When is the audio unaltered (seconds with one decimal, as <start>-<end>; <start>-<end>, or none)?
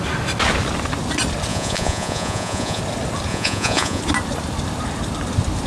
0.0-1.5; 2.8-3.3; 4.0-5.7